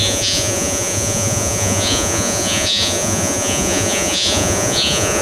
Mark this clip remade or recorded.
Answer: remade